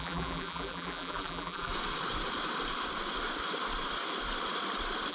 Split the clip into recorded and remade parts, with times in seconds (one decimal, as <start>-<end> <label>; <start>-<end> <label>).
0.0-1.7 remade; 1.7-5.1 recorded